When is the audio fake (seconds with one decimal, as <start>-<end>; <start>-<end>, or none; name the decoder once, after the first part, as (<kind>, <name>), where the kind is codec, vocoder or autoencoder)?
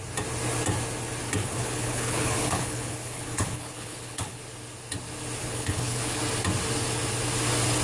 1.4-4.4 (codec, HILCodec); 5.4-6.2